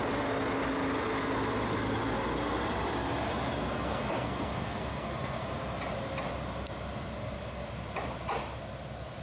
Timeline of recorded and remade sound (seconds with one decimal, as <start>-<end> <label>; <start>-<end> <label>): 0.0-3.6 recorded; 3.6-5.4 remade; 5.4-9.2 recorded